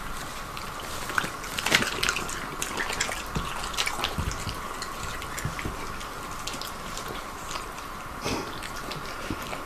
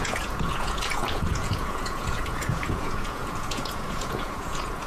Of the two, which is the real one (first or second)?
first